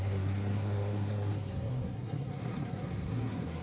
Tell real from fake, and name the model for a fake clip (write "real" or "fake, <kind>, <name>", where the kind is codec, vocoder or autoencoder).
fake, codec, SNAC